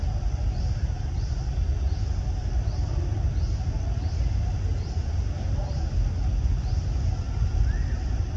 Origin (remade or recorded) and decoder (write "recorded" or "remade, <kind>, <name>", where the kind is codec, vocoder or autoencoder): recorded